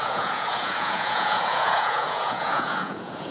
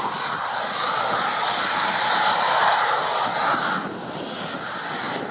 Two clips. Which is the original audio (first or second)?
second